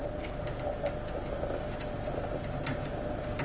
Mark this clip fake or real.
real